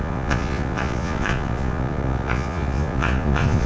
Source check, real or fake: fake